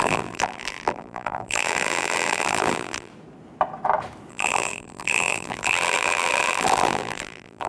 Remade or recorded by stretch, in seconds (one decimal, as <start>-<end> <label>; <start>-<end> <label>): 0.0-3.1 remade; 3.1-4.3 recorded; 4.3-7.7 remade

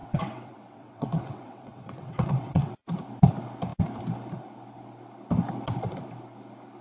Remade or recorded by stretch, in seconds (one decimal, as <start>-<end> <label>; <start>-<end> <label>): 0.0-2.7 remade; 2.7-6.8 recorded

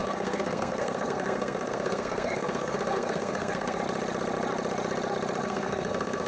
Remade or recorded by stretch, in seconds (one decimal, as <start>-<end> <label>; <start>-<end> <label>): 0.0-3.8 remade; 3.8-5.4 recorded; 5.4-6.3 remade

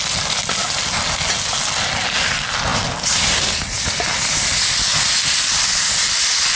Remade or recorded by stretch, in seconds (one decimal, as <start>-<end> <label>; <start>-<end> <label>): 0.0-6.6 recorded

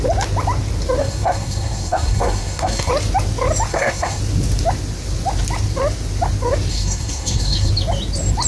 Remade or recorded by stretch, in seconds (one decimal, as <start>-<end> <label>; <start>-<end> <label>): 0.0-1.0 recorded; 1.0-2.9 remade; 2.9-3.7 recorded; 3.7-4.2 remade; 4.2-6.7 recorded; 6.7-7.7 remade; 7.7-8.5 recorded